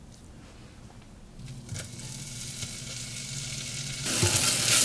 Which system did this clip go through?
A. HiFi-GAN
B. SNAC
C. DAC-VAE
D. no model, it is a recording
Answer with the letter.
D